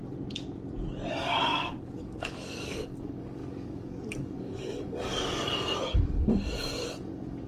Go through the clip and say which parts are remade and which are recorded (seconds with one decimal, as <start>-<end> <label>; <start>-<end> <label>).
0.0-1.1 recorded; 1.1-7.5 remade